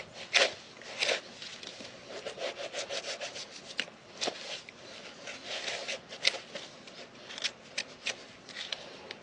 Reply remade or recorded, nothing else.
recorded